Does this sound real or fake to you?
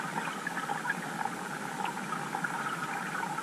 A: real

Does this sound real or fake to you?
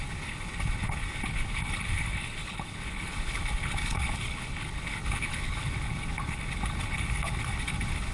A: fake